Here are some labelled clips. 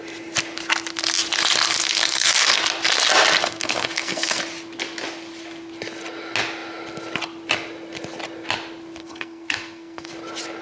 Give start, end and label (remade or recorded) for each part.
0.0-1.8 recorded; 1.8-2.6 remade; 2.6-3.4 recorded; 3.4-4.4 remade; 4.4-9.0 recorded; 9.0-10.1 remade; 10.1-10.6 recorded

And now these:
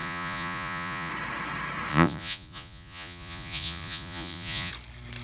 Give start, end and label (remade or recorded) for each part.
0.0-1.1 remade; 1.1-1.9 recorded; 1.9-4.7 remade; 4.7-5.2 recorded